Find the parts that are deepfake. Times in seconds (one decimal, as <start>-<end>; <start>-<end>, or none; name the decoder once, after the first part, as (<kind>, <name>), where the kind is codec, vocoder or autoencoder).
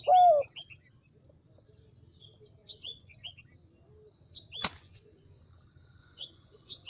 2.6-3.4 (vocoder, Vocos); 4.6-5.4; 6.0-6.9